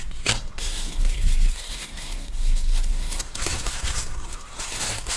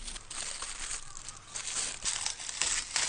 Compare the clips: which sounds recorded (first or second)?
second